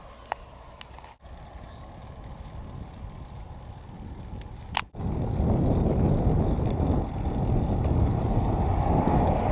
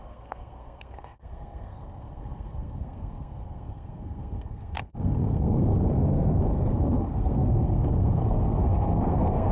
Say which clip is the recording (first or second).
first